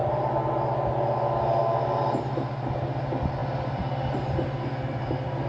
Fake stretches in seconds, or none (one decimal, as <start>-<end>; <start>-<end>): none